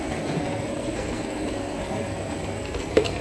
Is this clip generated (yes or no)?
yes